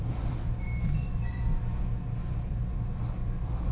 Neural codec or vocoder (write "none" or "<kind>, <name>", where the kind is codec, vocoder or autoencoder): vocoder, BigVGAN v2